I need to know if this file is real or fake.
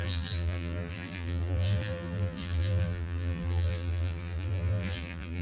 fake